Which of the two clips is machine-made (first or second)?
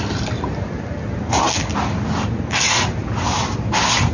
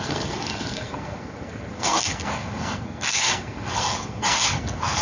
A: second